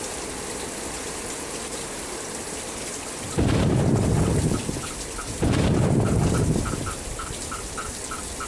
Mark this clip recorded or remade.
remade